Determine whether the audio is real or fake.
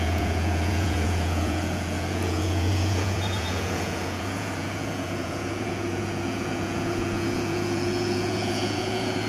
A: fake